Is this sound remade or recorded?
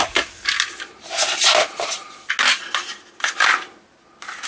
recorded